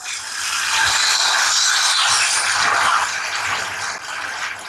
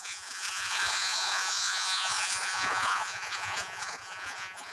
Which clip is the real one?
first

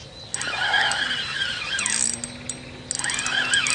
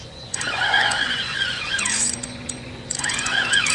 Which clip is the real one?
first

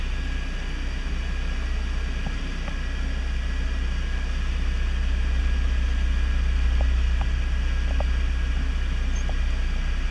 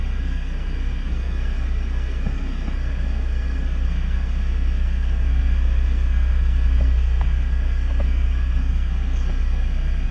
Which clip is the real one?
first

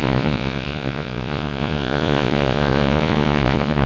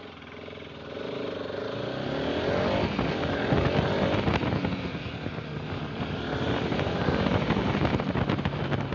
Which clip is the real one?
second